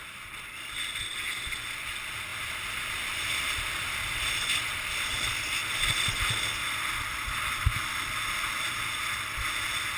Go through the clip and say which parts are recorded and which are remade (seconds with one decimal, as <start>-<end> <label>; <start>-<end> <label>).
0.0-10.0 recorded

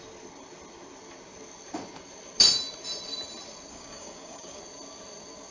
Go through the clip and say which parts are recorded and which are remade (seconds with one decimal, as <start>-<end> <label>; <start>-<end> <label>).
0.0-3.7 recorded; 3.7-4.6 remade; 4.6-5.5 recorded

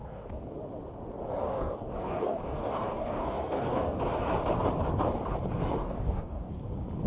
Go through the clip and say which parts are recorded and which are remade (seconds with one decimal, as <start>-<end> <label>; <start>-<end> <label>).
0.0-0.5 remade; 0.5-1.4 recorded; 1.4-4.0 remade; 4.0-5.8 recorded; 5.8-6.5 remade; 6.5-7.1 recorded